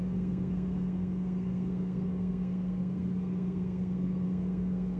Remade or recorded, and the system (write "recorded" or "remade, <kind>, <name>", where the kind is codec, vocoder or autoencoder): remade, codec, SNAC